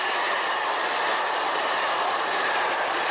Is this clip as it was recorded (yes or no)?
yes